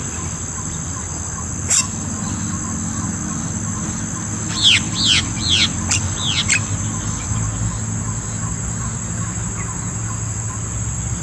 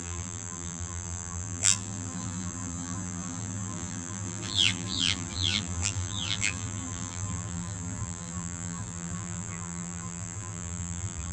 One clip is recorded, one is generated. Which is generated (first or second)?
second